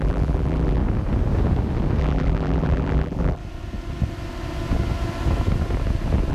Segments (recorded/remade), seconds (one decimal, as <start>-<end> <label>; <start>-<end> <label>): 0.0-0.8 remade; 0.8-2.0 recorded; 2.0-3.4 remade; 3.4-6.3 recorded